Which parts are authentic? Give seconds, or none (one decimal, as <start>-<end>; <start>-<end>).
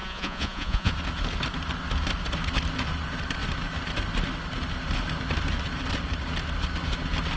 0.9-7.4